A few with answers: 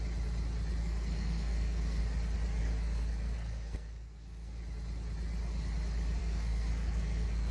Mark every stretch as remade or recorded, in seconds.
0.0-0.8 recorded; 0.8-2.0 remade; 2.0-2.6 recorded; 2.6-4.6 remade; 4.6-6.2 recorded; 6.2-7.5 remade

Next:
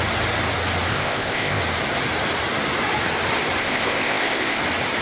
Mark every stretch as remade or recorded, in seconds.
0.0-0.9 recorded; 0.9-1.6 remade; 1.6-3.6 recorded; 3.6-4.6 remade; 4.6-5.0 recorded

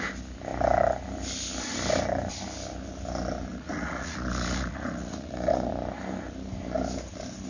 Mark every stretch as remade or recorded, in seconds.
0.0-3.5 recorded; 3.5-5.7 remade; 5.7-7.5 recorded

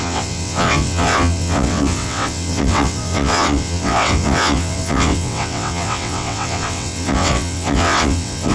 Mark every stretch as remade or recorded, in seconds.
0.0-8.5 remade

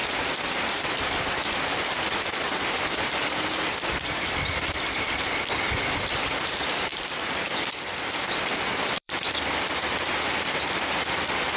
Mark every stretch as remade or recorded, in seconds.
0.0-11.6 remade

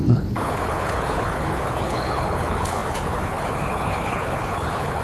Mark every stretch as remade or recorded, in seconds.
0.0-5.0 remade

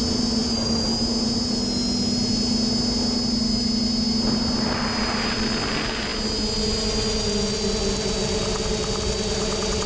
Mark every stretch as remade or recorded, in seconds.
0.0-9.9 recorded

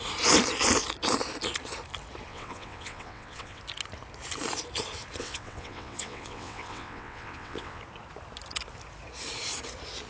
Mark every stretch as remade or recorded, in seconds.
0.0-2.3 recorded; 2.3-3.6 remade; 3.6-5.2 recorded; 5.2-7.8 remade; 7.8-10.1 recorded